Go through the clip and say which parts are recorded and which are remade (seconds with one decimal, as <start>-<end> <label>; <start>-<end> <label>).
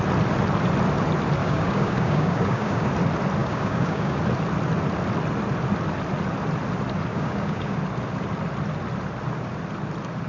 0.0-1.4 recorded; 1.4-2.9 remade; 2.9-3.4 recorded; 3.4-4.2 remade; 4.2-7.1 recorded; 7.1-7.8 remade; 7.8-10.3 recorded